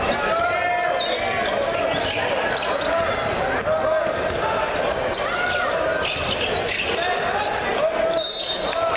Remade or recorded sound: recorded